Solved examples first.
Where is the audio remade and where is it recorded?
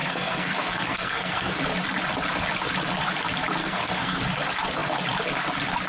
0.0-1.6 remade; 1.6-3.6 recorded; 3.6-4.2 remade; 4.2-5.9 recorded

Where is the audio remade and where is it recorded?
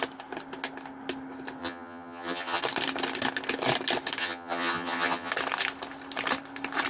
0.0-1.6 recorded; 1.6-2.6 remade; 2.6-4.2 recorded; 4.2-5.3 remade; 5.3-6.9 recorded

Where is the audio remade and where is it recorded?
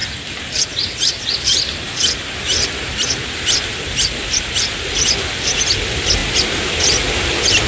0.0-6.2 remade; 6.2-6.8 recorded; 6.8-7.7 remade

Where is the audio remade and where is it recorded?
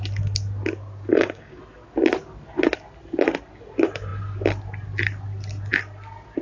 0.0-1.1 recorded; 1.1-1.6 remade; 1.6-6.4 recorded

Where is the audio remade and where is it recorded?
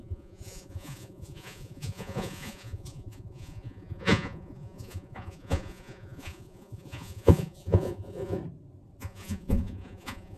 0.0-8.4 remade; 8.4-9.0 recorded; 9.0-10.4 remade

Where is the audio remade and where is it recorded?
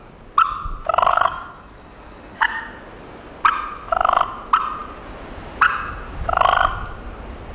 0.0-1.1 recorded; 1.1-2.6 remade; 2.6-7.5 recorded